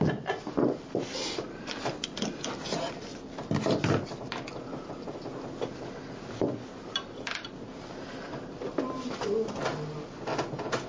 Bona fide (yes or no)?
yes